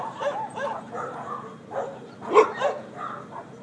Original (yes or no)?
yes